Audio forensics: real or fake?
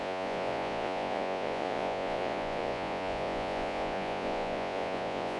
fake